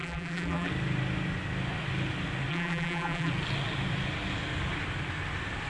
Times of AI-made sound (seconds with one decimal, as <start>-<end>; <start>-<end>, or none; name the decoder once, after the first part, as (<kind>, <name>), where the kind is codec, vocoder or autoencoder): 0.0-0.7 (vocoder, BigVGAN v2); 2.5-3.3